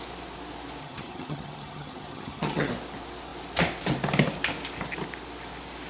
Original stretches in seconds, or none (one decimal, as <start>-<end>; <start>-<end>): 0.0-0.8; 2.7-5.9